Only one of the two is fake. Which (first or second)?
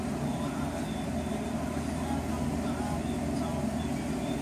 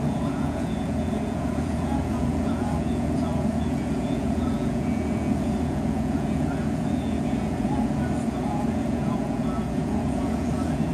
second